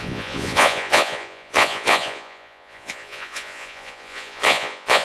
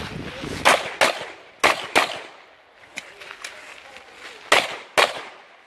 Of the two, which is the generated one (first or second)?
first